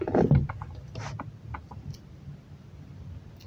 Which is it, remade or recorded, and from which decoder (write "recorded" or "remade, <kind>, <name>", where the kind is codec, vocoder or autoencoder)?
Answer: recorded